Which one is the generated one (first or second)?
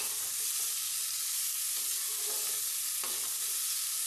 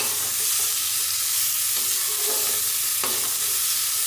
first